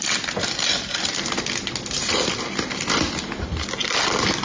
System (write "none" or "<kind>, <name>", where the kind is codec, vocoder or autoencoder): none